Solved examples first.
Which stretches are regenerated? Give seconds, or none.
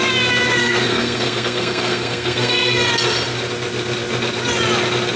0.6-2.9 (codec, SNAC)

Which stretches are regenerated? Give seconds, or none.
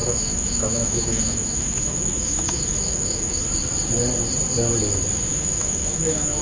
0.0-3.4 (autoencoder, DAC-VAE); 5.3-6.4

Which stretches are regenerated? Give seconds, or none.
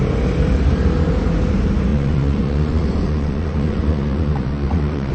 1.9-5.1 (vocoder, Vocos)